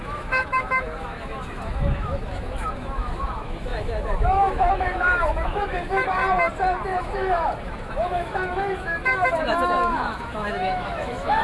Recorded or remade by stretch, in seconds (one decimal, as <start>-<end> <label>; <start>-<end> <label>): 0.0-6.2 remade; 6.2-7.0 recorded; 7.0-11.4 remade

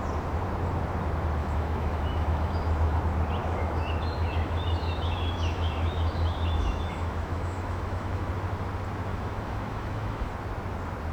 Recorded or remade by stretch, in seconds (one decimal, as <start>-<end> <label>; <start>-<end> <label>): 0.0-1.4 recorded; 1.4-3.0 remade; 3.0-3.4 recorded; 3.4-8.3 remade; 8.3-9.1 recorded; 9.1-10.3 remade; 10.3-11.1 recorded

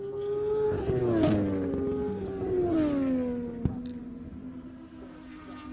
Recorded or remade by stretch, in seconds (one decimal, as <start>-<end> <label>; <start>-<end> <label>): 0.0-5.7 recorded

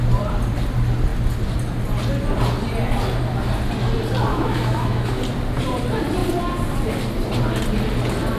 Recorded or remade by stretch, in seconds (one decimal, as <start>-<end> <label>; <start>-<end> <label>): 0.0-4.3 recorded; 4.3-5.2 remade; 5.2-8.4 recorded